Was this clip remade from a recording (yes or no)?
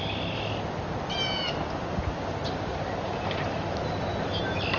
no